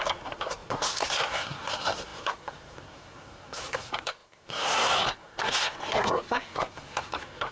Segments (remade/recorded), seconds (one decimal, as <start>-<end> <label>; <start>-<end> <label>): 0.0-7.5 remade